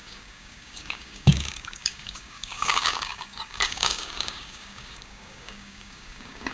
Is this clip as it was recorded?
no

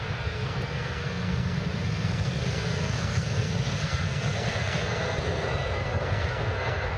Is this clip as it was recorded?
no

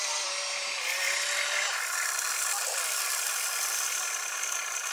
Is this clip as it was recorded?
yes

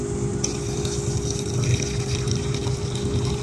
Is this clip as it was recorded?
yes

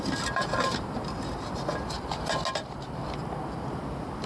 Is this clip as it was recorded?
yes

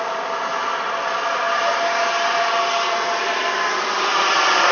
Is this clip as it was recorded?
yes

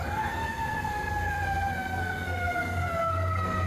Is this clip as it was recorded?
no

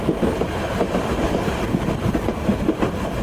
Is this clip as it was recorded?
no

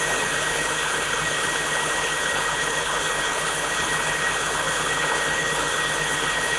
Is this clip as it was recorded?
no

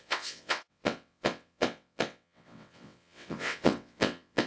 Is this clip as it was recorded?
no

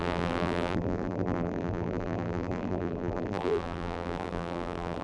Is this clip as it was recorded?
no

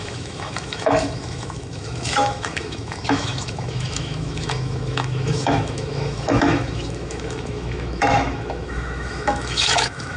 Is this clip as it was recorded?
no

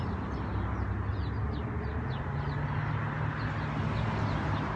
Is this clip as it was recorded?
yes